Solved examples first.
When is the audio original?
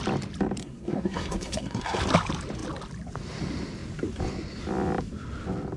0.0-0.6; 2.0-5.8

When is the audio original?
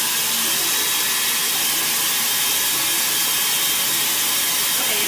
0.0-5.1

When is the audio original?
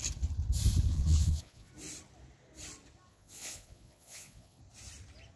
0.0-0.9; 1.7-3.1; 4.6-5.4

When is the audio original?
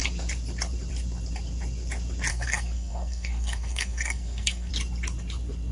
0.0-2.3; 4.7-5.7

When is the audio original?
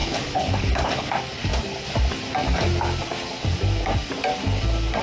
1.1-5.0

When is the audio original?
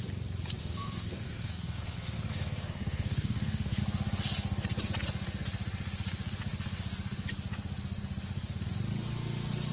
0.0-0.6; 3.8-9.7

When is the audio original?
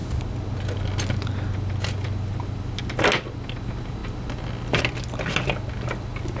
0.0-6.4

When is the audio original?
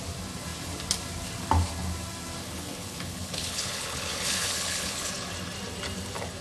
0.0-2.4; 5.1-6.4